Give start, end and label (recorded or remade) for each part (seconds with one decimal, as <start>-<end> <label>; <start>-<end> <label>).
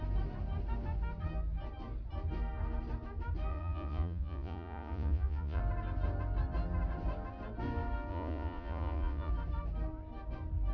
0.0-3.5 recorded; 3.5-5.6 remade; 5.6-8.1 recorded; 8.1-9.3 remade; 9.3-10.7 recorded